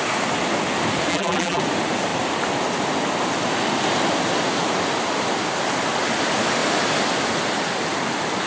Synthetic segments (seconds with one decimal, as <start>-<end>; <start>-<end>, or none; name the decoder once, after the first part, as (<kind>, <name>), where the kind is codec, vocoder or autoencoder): 1.1-1.6 (vocoder, BigVGAN v2)